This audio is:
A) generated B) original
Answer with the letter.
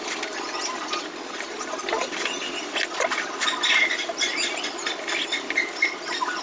B